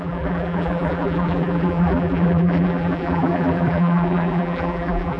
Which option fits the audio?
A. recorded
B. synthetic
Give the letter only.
B